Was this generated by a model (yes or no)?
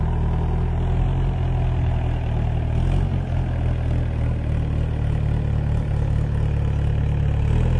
no